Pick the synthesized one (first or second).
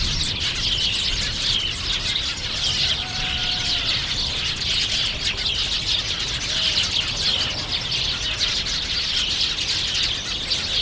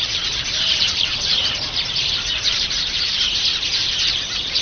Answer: second